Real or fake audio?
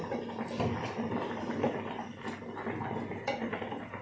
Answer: real